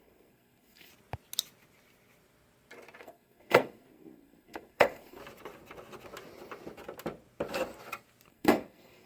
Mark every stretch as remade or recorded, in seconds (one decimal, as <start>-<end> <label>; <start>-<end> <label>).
0.0-0.9 remade; 0.9-3.0 recorded; 3.0-5.2 remade; 5.2-8.3 recorded; 8.3-9.1 remade